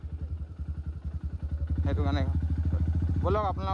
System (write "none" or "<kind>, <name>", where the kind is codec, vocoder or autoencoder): none